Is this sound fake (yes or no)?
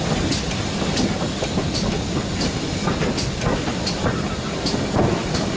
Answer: no